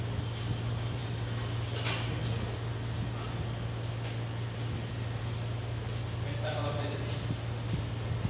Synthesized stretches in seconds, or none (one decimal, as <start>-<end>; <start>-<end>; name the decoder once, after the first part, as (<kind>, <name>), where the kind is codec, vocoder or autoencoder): none